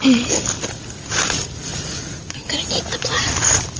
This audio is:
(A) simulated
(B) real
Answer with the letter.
B